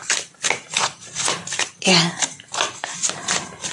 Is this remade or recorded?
recorded